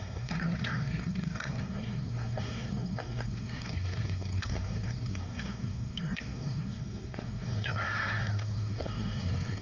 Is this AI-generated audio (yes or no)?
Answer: yes